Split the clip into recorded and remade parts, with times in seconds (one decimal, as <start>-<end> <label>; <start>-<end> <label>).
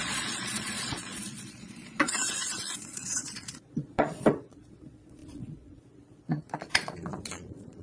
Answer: 0.0-7.8 remade